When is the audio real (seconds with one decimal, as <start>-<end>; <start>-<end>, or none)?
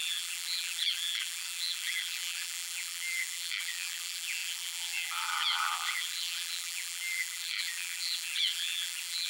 none